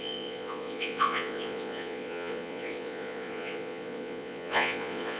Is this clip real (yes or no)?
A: no